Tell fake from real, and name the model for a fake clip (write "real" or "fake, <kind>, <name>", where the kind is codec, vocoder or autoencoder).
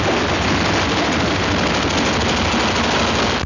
real